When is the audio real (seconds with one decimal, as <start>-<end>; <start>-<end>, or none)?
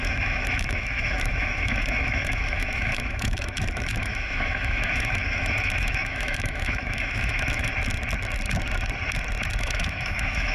7.7-9.6